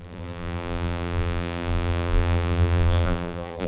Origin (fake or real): fake